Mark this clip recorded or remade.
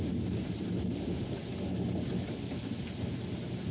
recorded